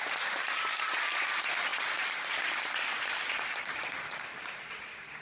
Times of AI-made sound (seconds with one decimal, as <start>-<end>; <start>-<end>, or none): 1.7-3.4